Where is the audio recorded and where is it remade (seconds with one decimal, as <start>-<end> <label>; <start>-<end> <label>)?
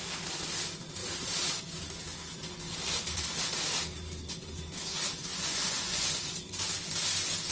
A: 0.0-5.2 recorded; 5.2-6.2 remade; 6.2-7.5 recorded